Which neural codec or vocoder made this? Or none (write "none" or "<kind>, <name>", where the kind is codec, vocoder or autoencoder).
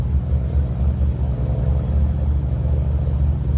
none